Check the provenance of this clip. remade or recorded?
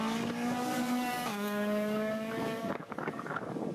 remade